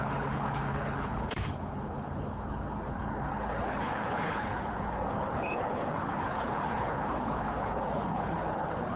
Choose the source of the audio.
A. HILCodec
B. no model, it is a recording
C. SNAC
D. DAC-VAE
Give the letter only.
A